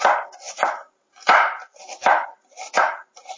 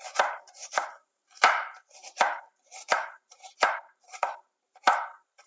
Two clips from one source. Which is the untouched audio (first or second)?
first